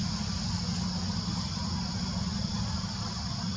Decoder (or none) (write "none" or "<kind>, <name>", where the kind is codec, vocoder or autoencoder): none